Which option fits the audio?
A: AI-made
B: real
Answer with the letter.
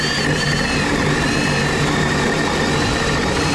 B